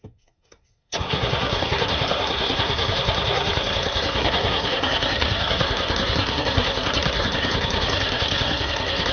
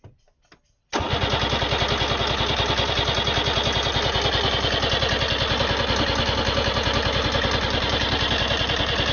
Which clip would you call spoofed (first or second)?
first